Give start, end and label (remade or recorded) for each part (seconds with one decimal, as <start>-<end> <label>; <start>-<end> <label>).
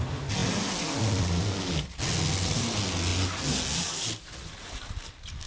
0.0-5.5 recorded